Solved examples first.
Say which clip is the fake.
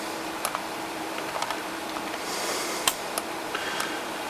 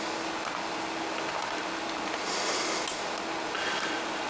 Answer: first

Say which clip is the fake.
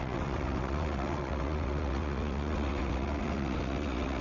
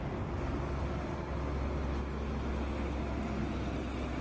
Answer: first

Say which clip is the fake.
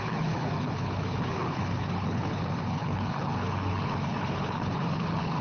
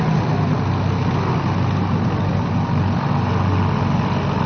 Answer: first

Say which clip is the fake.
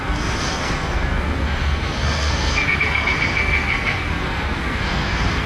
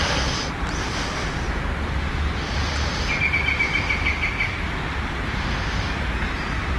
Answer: first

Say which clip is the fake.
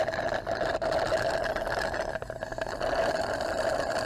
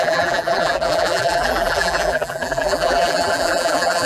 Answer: second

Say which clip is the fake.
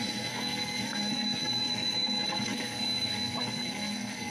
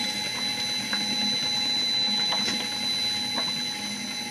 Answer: first